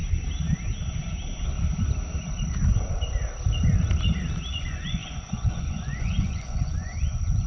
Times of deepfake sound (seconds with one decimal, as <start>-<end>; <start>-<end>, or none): 4.5-7.5